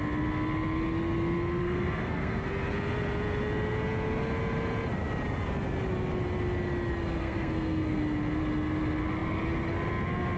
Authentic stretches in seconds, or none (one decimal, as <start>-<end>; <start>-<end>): 0.0-1.6; 2.5-7.2; 8.0-10.4